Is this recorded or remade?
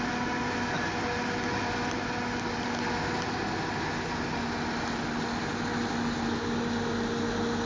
recorded